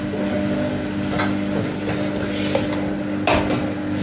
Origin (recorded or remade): recorded